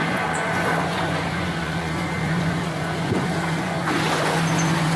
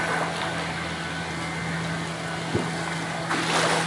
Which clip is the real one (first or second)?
second